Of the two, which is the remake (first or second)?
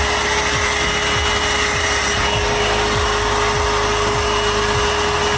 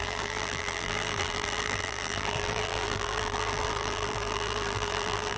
second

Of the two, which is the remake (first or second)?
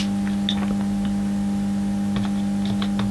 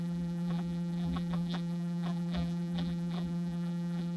second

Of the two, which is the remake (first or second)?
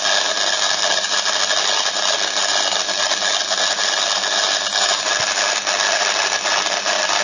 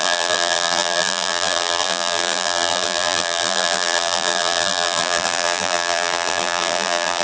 second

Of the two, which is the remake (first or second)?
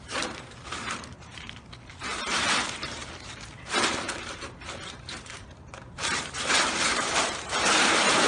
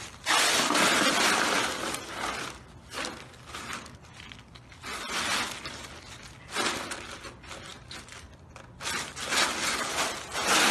first